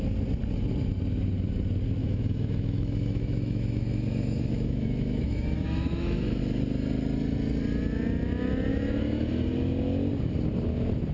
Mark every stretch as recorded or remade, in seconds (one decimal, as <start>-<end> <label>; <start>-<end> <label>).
0.0-2.0 recorded; 2.0-6.4 remade; 6.4-8.7 recorded; 8.7-9.3 remade; 9.3-11.1 recorded

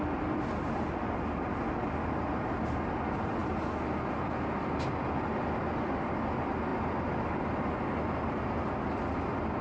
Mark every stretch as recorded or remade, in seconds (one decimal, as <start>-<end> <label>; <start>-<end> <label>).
0.0-9.6 recorded

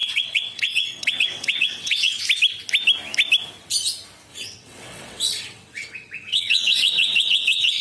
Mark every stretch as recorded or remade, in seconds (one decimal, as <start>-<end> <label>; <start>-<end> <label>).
0.0-2.2 remade; 2.2-4.3 recorded; 4.3-7.8 remade